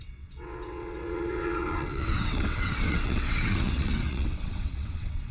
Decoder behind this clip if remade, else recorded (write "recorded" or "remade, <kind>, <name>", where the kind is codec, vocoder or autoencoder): remade, vocoder, WaveNeXt